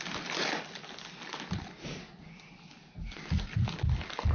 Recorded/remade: recorded